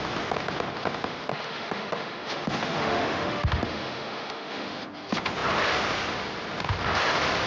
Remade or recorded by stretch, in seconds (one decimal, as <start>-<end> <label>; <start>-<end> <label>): 0.0-1.3 recorded; 1.3-4.7 remade; 4.7-7.5 recorded